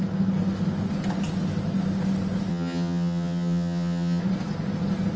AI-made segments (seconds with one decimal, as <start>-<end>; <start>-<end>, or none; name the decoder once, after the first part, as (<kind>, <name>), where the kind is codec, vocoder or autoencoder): 2.5-4.2 (vocoder, HiFi-GAN)